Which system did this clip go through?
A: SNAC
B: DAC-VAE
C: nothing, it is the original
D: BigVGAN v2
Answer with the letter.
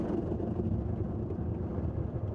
C